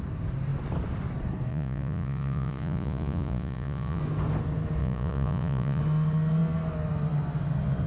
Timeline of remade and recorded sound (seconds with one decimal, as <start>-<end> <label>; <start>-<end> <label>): 0.0-1.5 recorded; 1.5-4.0 remade; 4.0-4.8 recorded; 4.8-5.8 remade; 5.8-7.9 recorded

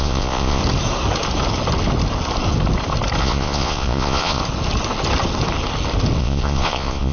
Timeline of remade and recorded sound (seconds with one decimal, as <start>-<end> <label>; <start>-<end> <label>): 0.0-0.6 remade; 0.6-3.2 recorded; 3.2-4.4 remade; 4.4-6.2 recorded; 6.2-7.1 remade